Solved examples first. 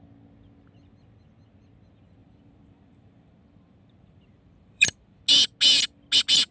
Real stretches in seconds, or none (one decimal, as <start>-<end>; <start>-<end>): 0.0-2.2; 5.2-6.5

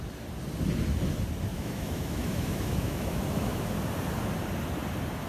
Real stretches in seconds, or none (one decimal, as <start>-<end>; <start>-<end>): 0.0-1.5; 3.7-5.3

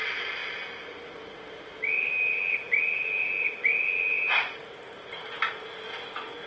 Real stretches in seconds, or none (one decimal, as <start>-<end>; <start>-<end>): 0.0-6.5

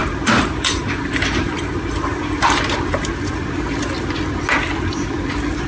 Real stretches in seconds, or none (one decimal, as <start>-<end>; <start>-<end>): 3.4-5.7

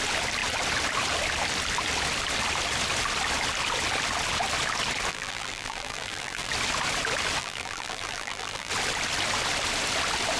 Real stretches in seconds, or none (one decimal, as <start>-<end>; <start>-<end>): 0.0-5.1; 6.5-7.4; 8.7-10.4